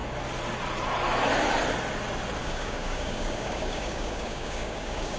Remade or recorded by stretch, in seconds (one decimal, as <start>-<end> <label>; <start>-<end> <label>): 0.0-2.4 recorded; 2.4-5.2 remade

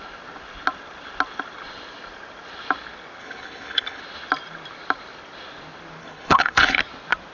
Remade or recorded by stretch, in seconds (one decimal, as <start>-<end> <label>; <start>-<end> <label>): 0.0-3.2 recorded; 3.2-4.0 remade; 4.0-6.0 recorded; 6.0-6.8 remade; 6.8-7.3 recorded

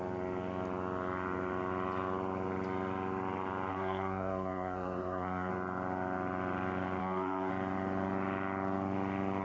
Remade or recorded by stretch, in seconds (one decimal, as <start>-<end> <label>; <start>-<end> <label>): 0.0-3.7 recorded; 3.7-5.5 remade; 5.5-7.0 recorded; 7.0-7.5 remade; 7.5-9.4 recorded